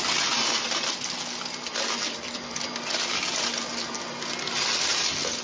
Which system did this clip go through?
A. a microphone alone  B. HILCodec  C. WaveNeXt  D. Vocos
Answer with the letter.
A